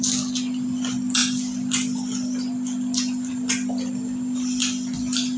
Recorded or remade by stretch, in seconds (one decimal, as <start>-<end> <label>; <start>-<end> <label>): 0.0-5.4 recorded